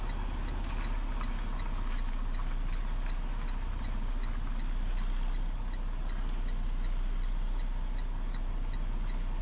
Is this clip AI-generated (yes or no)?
no